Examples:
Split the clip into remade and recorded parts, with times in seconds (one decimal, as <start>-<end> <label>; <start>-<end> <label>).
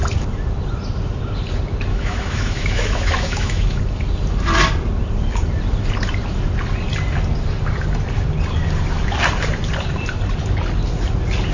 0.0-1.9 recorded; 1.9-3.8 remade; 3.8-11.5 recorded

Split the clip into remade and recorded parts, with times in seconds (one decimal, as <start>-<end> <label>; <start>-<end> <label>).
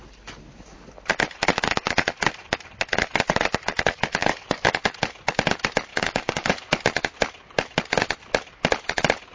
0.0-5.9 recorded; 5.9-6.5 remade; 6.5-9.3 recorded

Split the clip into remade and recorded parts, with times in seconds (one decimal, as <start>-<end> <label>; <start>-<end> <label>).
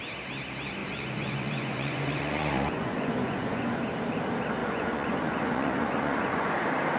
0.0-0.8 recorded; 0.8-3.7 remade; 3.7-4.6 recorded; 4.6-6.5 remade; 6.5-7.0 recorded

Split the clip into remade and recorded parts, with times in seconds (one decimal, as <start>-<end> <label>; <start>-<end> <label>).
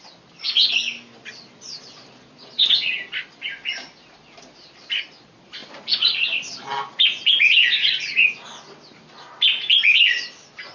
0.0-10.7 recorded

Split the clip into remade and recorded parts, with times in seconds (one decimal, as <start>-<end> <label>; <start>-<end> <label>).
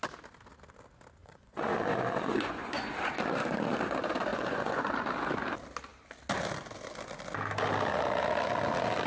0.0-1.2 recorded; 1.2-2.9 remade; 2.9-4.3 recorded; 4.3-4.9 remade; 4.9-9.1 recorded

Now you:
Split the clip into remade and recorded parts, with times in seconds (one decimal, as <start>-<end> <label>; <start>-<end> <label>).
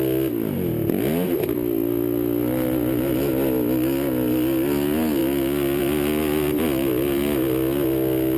0.0-8.4 recorded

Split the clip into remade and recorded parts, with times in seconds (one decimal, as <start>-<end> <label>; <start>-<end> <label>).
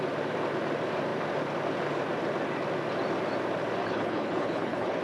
0.0-3.8 recorded; 3.8-5.0 remade